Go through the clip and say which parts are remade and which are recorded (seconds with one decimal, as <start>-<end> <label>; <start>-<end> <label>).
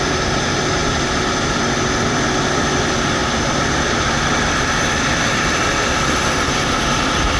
0.0-7.4 recorded